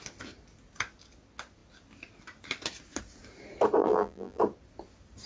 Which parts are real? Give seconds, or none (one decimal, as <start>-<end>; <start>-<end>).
0.0-3.8; 4.4-5.3